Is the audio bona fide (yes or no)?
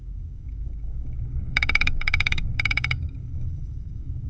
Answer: no